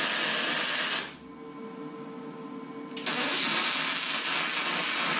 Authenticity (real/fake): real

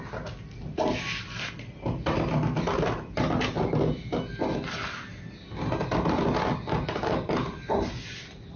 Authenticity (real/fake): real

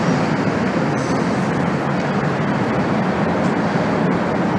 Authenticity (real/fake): real